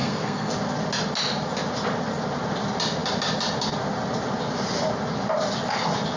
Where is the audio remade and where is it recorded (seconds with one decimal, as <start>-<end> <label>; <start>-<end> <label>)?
0.0-0.5 remade; 0.5-6.2 recorded